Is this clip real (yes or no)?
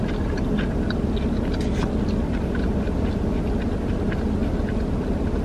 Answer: yes